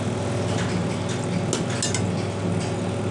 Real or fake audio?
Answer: real